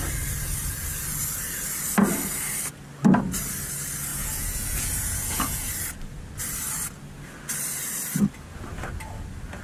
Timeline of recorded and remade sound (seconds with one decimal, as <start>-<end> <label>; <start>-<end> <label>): 0.0-4.1 recorded; 4.1-5.7 remade; 5.7-9.6 recorded